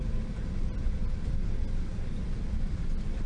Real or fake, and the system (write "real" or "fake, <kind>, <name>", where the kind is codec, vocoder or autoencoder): real